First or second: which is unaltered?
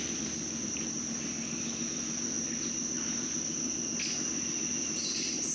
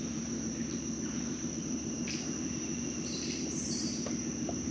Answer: first